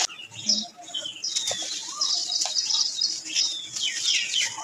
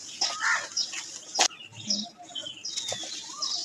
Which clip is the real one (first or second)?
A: first